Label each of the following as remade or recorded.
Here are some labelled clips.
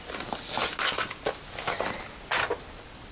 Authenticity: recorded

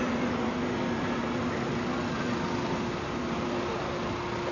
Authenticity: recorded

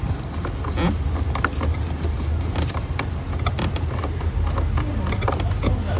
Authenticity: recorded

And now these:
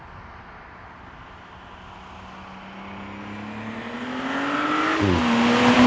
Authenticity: recorded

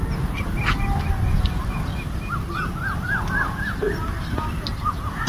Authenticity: recorded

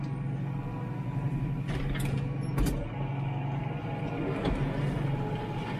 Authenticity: recorded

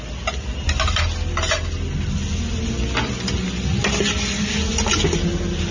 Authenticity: recorded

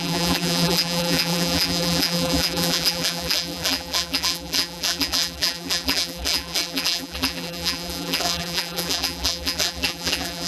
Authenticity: remade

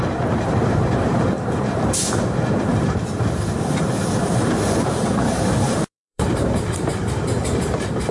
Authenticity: remade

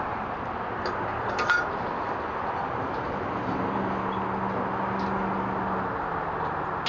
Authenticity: recorded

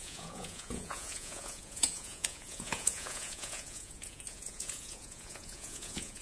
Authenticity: remade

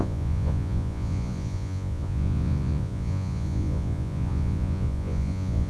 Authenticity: remade